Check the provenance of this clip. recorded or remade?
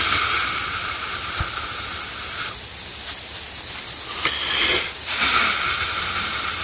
recorded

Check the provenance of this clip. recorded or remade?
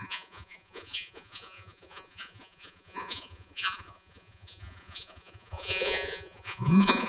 remade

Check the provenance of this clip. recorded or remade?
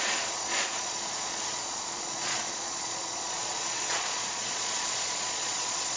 remade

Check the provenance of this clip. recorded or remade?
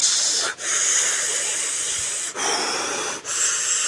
recorded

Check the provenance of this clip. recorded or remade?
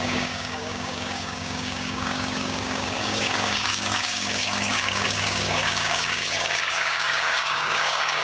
remade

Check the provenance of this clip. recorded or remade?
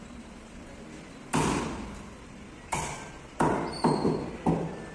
remade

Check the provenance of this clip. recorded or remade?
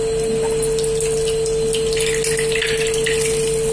recorded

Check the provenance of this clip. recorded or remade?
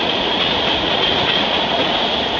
remade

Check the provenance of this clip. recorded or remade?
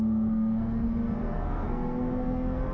remade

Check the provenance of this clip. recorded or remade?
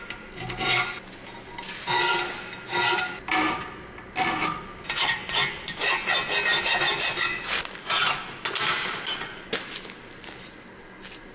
recorded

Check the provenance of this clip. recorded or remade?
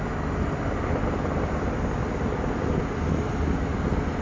recorded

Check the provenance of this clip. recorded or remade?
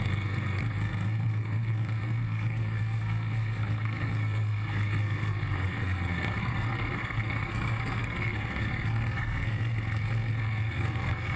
remade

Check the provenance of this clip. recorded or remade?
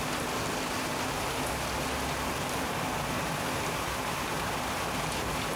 recorded